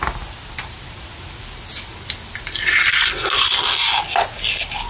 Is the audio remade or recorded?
recorded